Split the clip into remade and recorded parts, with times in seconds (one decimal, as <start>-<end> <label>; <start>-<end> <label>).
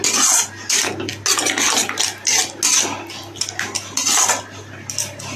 0.0-5.4 recorded